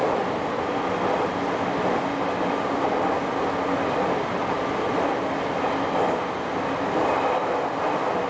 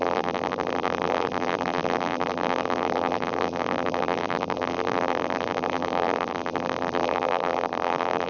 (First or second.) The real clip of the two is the first